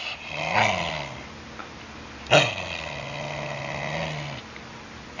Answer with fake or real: real